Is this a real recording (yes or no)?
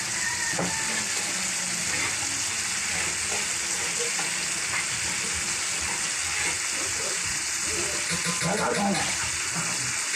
yes